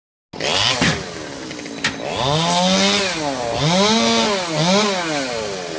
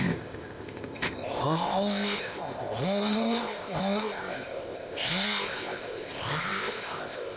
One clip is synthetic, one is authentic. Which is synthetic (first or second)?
second